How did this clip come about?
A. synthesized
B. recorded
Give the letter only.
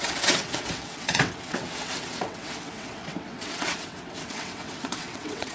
A